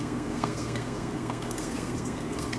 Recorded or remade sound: remade